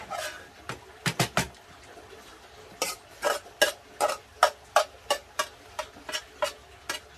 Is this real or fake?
real